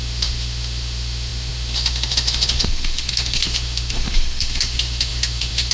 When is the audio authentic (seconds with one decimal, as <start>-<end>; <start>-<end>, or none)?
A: none